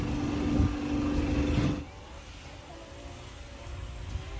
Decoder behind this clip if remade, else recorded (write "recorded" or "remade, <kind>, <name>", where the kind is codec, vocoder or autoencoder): recorded